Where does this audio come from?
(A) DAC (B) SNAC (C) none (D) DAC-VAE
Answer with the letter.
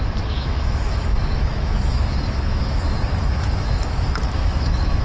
D